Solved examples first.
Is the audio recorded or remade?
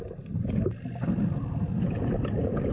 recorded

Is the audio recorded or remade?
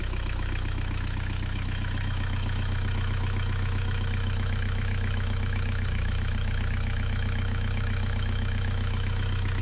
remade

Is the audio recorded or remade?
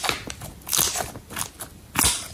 recorded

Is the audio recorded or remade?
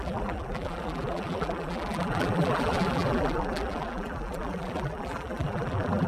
remade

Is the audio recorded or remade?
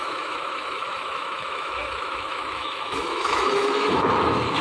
remade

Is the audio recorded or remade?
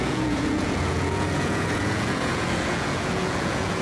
remade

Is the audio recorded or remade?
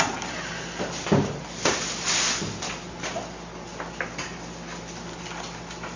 recorded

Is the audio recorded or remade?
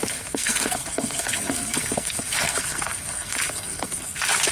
remade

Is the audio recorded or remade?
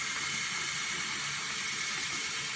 recorded